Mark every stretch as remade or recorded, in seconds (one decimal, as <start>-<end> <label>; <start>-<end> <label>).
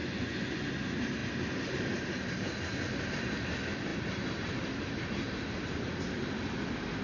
0.0-0.7 remade; 0.7-7.0 recorded